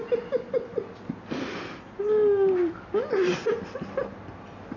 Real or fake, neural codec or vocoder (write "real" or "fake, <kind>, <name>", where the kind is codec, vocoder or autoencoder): real